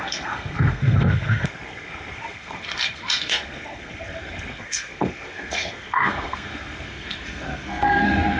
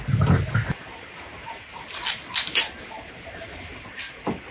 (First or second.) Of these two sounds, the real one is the second